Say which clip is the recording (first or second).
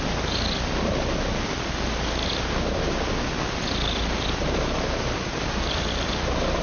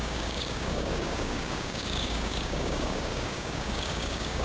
first